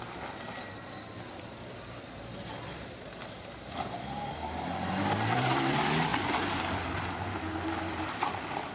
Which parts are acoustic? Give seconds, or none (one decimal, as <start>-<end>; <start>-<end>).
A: 0.0-8.7